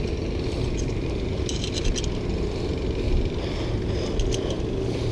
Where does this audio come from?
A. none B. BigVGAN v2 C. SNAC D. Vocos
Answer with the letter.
A